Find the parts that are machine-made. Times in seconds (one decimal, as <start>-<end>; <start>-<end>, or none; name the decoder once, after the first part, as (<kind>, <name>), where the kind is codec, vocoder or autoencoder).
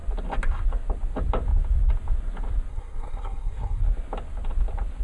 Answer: 2.7-3.8 (codec, SNAC)